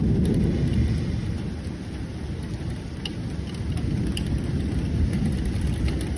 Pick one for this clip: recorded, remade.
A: recorded